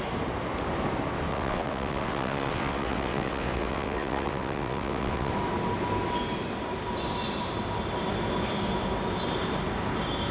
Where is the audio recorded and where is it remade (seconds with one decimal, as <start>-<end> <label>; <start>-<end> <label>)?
0.0-1.3 recorded; 1.3-5.3 remade; 5.3-10.3 recorded